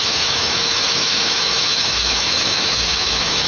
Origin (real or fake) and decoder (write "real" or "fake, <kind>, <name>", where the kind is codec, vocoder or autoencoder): fake, autoencoder, DAC-VAE